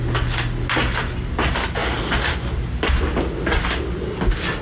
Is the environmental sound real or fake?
real